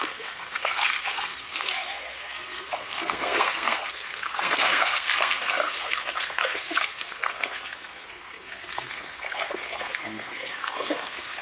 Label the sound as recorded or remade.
remade